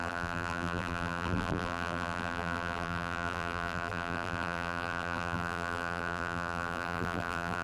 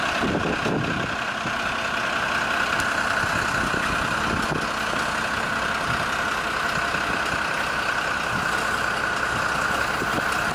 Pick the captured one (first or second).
second